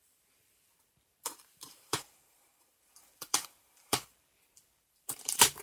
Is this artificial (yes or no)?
yes